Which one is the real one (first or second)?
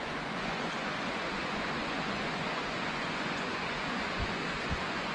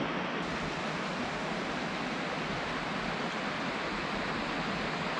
second